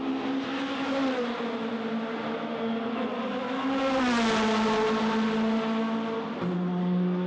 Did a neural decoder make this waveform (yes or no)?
no